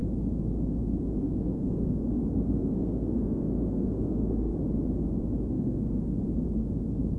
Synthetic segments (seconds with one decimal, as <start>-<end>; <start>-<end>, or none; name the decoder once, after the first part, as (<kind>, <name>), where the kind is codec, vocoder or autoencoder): 1.2-4.5 (codec, SNAC); 5.5-6.2